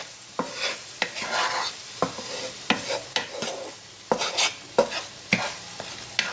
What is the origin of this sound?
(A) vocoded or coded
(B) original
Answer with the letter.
B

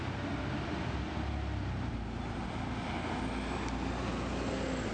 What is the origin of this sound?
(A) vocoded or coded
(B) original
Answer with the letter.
B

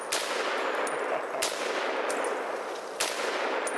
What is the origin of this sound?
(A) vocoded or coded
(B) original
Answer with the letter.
B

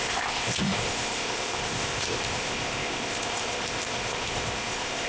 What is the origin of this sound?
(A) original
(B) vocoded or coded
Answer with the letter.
B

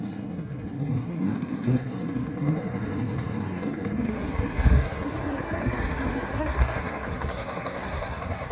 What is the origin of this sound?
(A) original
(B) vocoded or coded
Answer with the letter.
B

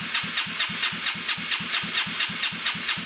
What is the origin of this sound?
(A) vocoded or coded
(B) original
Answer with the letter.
B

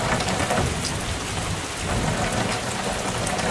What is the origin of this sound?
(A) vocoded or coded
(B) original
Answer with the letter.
B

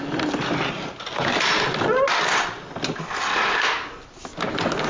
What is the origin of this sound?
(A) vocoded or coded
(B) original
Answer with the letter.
B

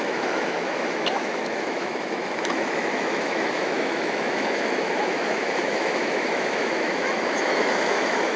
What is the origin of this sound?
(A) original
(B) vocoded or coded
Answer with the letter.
B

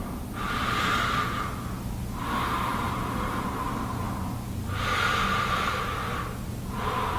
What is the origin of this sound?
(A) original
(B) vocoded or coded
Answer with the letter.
B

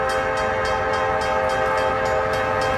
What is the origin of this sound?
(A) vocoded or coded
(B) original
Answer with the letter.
B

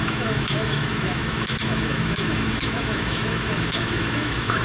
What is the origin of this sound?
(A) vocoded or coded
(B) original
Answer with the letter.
A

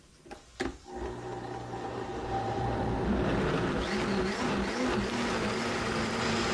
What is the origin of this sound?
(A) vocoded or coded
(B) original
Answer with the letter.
B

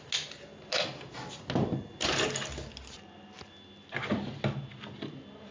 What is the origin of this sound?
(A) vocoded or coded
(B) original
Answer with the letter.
B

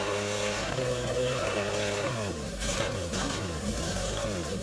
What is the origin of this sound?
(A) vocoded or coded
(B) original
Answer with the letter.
A